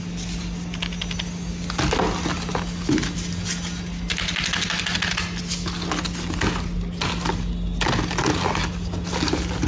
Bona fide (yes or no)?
yes